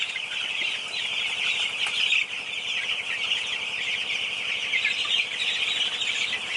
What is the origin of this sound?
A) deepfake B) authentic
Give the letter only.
B